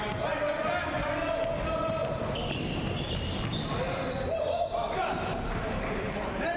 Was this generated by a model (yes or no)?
no